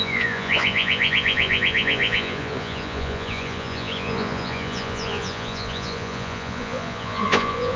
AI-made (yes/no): yes